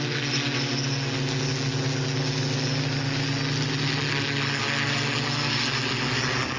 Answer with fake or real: real